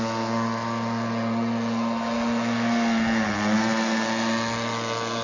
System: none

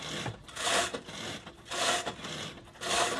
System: none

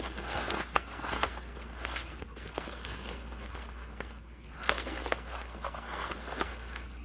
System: codec, SNAC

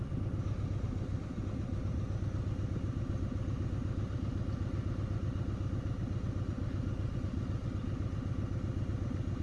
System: none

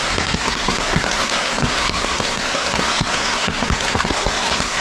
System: codec, SNAC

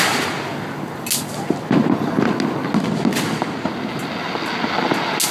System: none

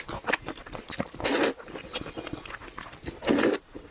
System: none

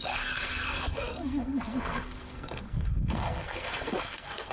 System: codec, SNAC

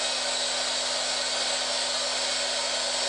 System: none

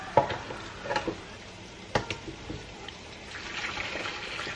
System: none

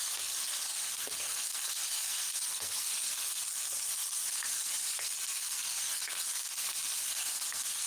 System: codec, SNAC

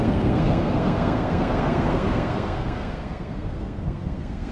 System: codec, SNAC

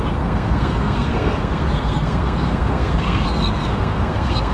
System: codec, SNAC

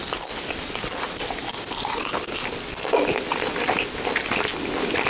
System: none